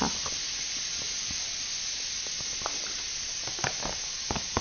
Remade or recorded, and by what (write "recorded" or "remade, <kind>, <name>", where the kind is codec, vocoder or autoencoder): recorded